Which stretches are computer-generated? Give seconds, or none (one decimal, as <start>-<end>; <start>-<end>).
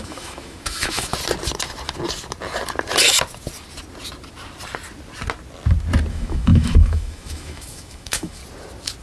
0.0-1.1; 6.1-8.4